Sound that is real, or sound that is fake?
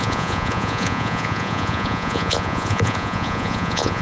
fake